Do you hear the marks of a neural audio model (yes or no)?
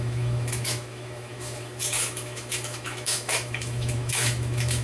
yes